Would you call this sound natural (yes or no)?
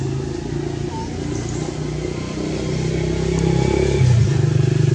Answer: yes